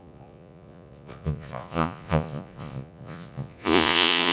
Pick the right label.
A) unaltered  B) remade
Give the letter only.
B